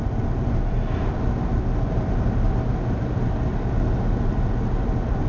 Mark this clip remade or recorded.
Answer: recorded